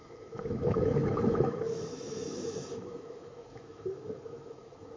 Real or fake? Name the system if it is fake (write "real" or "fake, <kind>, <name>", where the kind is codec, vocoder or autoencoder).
fake, autoencoder, DAC-VAE